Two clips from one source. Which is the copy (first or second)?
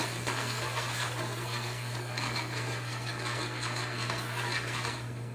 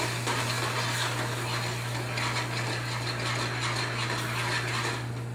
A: first